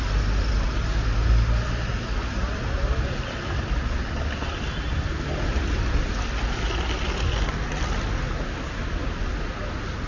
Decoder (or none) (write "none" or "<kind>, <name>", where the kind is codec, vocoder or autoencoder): none